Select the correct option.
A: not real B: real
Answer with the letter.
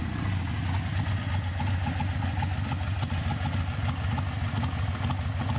B